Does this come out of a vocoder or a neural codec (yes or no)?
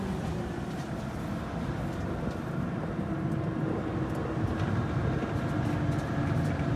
no